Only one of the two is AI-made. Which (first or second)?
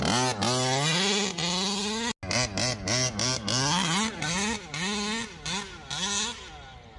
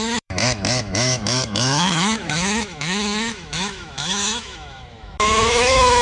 second